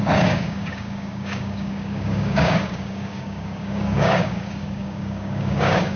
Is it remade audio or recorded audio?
remade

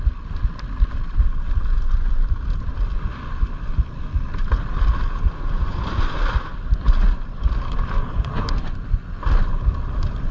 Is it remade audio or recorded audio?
recorded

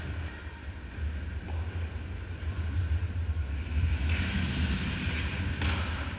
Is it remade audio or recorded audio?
recorded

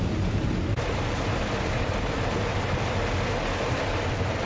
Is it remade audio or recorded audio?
recorded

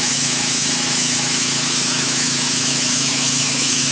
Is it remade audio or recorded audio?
remade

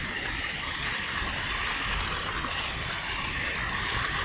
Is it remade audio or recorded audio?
recorded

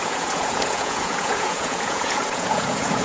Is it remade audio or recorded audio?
remade